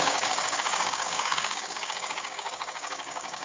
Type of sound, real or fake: fake